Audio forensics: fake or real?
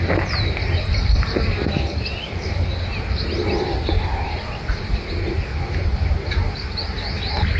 real